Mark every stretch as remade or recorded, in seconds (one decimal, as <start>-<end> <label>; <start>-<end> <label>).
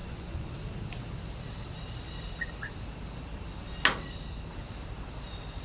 0.0-0.5 remade; 0.5-5.6 recorded